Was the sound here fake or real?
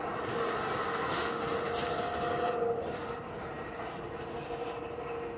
real